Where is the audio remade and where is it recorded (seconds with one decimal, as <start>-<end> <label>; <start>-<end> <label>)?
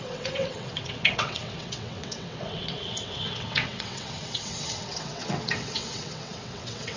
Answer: 0.0-7.0 remade